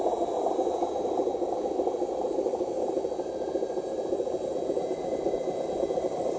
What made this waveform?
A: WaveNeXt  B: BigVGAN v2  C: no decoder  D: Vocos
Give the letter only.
C